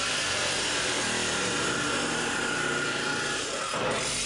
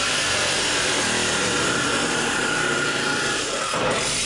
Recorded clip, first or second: first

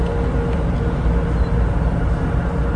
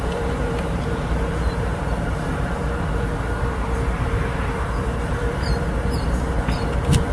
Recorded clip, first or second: first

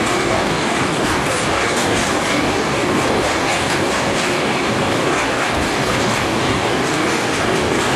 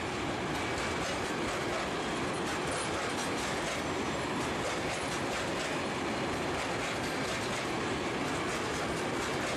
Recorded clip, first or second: second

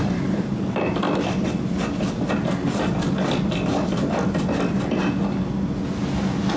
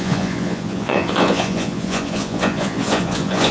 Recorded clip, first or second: first